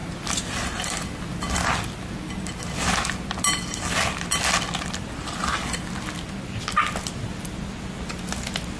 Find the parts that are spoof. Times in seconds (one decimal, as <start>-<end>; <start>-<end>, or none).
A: none